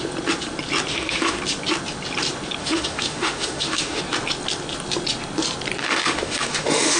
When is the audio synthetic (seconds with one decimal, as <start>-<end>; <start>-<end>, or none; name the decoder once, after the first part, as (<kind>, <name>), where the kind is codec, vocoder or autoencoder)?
0.9-1.4 (autoencoder, DAC-VAE); 2.6-4.0; 5.8-7.0